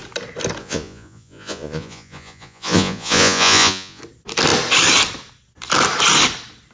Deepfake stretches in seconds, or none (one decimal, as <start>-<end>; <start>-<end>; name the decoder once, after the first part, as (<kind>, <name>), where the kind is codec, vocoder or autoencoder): 0.6-4.0 (vocoder, Vocos)